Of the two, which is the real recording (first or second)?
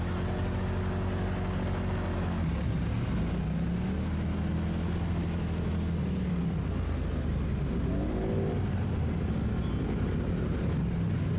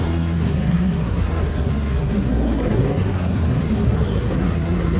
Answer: first